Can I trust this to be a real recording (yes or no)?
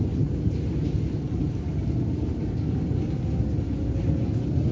yes